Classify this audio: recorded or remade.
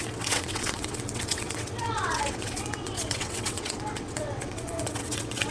remade